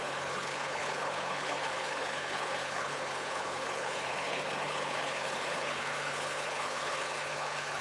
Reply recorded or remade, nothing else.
remade